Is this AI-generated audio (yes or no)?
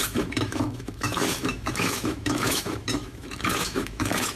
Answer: yes